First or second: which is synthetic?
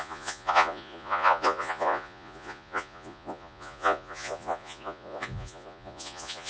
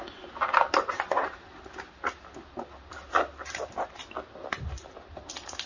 first